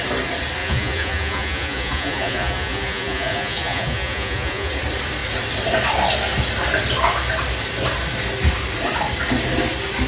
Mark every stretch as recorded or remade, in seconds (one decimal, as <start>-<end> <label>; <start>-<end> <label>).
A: 0.0-0.6 recorded; 0.6-4.7 remade; 4.7-10.1 recorded